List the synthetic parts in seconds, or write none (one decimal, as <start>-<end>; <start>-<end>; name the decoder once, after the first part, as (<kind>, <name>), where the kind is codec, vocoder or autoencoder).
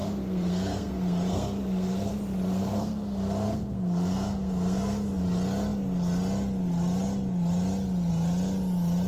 0.0-2.1 (codec, SNAC); 2.5-5.2